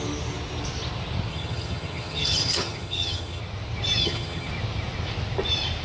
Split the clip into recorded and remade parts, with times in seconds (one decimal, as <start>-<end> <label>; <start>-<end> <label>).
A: 0.0-1.3 recorded; 1.3-3.4 remade; 3.4-4.0 recorded; 4.0-4.5 remade; 4.5-5.8 recorded